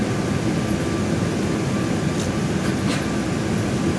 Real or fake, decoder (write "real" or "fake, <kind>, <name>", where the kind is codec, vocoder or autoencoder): real